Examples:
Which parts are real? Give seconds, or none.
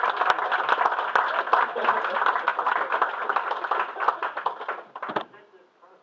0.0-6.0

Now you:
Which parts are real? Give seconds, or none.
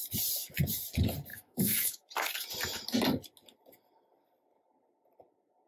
0.0-1.3; 2.1-5.7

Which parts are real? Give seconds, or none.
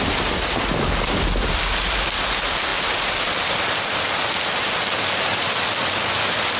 0.0-6.6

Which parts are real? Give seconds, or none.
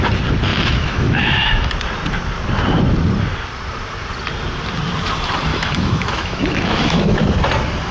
0.0-0.5; 1.7-5.5; 7.2-7.9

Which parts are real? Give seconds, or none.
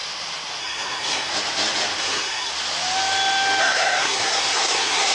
0.0-0.6; 1.3-2.0; 2.5-3.6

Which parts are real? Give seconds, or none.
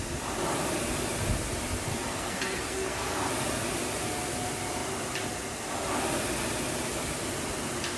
0.0-1.9; 3.3-8.0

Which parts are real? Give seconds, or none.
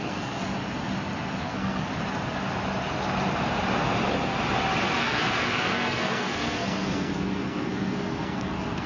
0.4-1.4; 1.9-5.0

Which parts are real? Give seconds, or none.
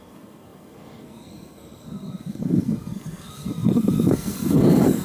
none